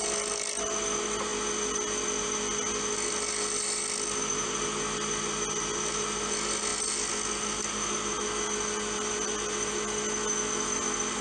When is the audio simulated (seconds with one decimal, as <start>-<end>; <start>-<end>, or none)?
none